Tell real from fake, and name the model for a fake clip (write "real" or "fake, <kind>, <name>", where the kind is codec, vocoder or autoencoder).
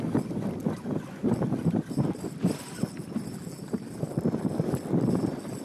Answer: real